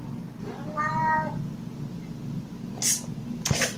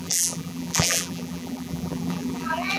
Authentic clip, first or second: first